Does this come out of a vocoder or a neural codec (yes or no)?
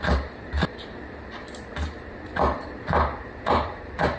yes